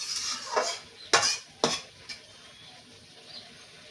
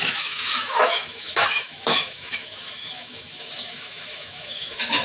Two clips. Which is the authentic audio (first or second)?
first